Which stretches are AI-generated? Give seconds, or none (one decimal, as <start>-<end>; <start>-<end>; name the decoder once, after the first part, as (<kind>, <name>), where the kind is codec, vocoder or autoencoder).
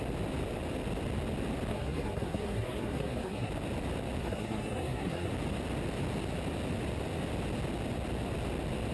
1.7-3.5 (codec, SNAC); 4.2-5.3